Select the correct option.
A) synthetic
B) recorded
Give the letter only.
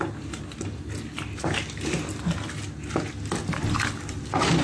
B